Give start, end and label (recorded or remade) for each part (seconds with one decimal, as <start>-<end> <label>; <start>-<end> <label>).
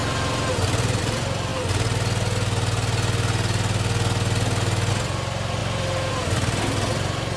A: 0.0-1.5 remade; 1.5-4.9 recorded; 4.9-5.6 remade; 5.6-6.1 recorded; 6.1-7.4 remade